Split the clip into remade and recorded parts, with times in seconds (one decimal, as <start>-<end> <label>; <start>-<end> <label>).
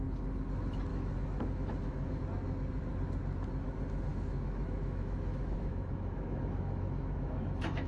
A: 0.0-0.9 recorded; 0.9-2.2 remade; 2.2-4.1 recorded; 4.1-7.9 remade